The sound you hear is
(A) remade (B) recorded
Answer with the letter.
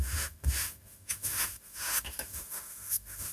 A